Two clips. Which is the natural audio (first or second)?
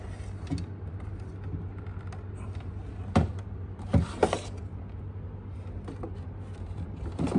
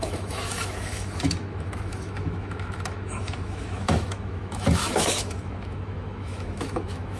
first